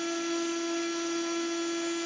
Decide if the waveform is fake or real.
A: real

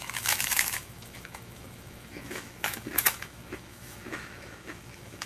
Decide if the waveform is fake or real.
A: fake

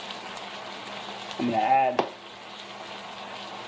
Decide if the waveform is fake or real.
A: real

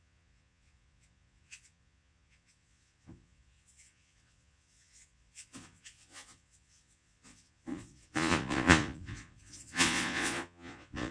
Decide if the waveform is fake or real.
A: fake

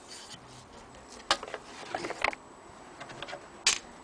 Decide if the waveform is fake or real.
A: real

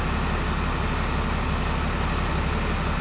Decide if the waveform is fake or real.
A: real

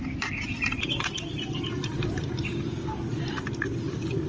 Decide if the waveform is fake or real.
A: real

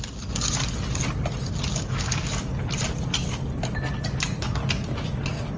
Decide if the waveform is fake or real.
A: real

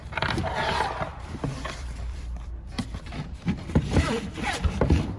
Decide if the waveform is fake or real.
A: fake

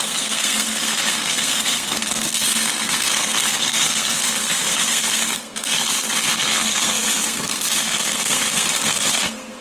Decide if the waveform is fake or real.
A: fake